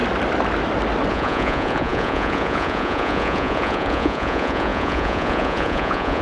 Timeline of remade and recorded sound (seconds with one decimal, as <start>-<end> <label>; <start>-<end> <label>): 0.0-1.1 recorded; 1.1-6.2 remade